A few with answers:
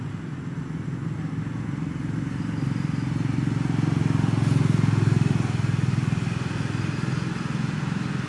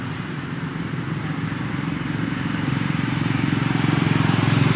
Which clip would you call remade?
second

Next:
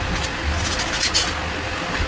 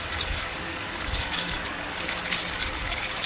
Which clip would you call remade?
second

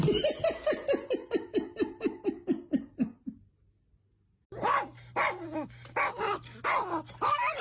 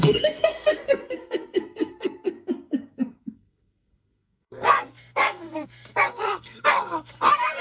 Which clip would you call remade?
second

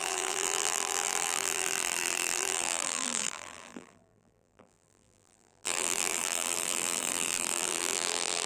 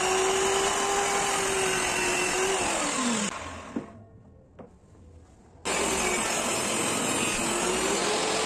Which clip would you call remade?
first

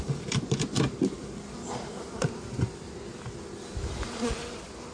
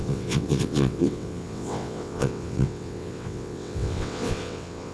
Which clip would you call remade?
second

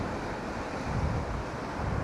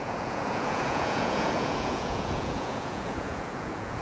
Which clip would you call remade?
second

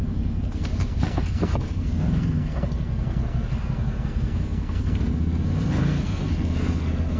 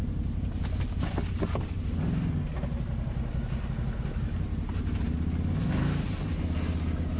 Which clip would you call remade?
first